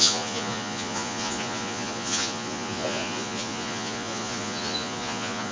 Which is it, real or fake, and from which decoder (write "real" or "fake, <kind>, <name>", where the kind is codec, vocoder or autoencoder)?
fake, vocoder, Vocos